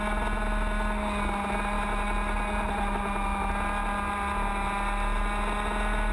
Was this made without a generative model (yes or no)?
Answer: yes